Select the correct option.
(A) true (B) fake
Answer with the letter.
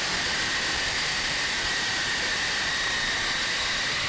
A